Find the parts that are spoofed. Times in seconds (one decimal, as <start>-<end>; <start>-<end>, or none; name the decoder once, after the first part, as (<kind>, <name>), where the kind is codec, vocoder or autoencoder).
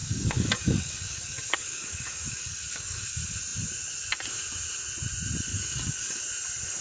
0.0-3.1 (codec, DAC); 5.5-6.2